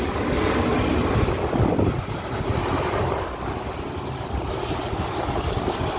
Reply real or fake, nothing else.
real